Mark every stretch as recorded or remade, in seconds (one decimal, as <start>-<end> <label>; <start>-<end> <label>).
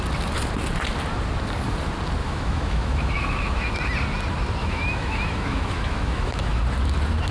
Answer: 0.0-2.2 recorded; 2.2-3.7 remade; 3.7-4.6 recorded; 4.6-6.6 remade; 6.6-7.3 recorded